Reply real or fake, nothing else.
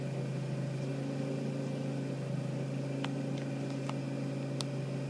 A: real